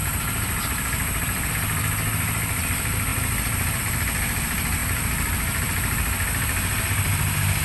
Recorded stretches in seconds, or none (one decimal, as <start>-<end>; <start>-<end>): 1.5-7.6